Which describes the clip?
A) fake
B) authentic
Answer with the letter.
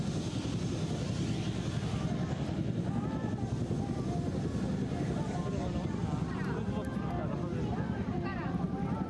B